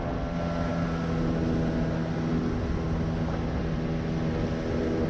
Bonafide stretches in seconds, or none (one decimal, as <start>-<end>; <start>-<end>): 0.0-5.1